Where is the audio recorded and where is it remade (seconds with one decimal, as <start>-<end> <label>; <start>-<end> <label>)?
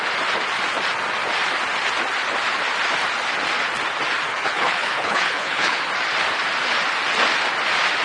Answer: 0.0-4.3 recorded; 4.3-5.8 remade; 5.8-8.0 recorded